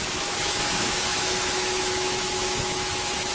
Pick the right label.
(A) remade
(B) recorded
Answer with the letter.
A